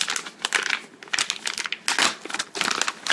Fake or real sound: real